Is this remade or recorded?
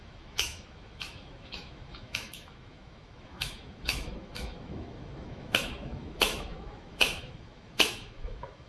remade